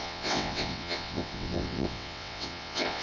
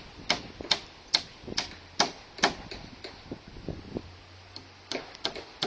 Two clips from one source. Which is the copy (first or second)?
first